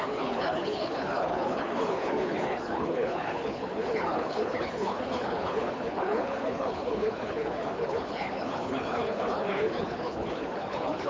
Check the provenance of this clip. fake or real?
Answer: fake